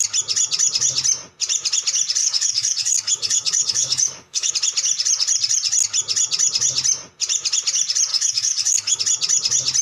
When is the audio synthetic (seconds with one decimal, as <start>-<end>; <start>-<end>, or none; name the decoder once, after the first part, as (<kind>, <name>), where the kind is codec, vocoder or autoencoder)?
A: 2.2-4.5 (codec, DAC); 8.1-9.0